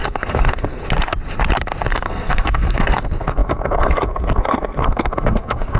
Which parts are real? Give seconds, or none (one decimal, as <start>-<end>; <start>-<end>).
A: 0.8-1.9